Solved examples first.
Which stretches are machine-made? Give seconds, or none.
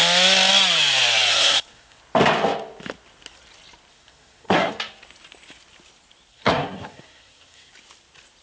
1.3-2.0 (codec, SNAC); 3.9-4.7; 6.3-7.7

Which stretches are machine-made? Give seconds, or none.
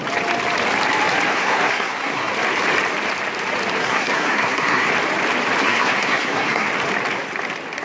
1.3-2.3 (codec, SNAC); 3.8-4.9; 5.6-6.7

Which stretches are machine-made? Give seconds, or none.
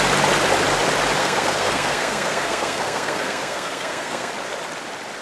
1.2-4.3 (codec, SNAC)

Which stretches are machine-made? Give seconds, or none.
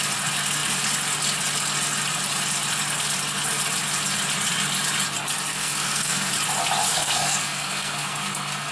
5.5-6.3 (codec, SNAC); 6.9-8.7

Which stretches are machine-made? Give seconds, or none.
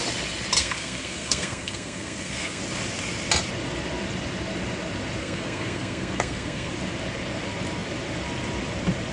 0.6-2.6 (codec, SNAC); 5.2-6.7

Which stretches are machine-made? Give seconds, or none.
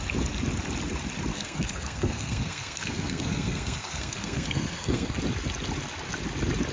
1.3-5.2 (codec, SNAC)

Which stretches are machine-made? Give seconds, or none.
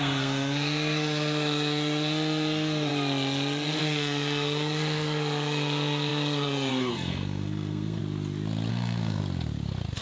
0.0-2.9 (codec, SNAC); 3.8-8.0; 8.7-9.2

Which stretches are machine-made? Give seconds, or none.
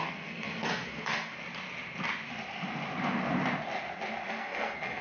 0.0-1.3 (codec, SNAC); 4.3-5.0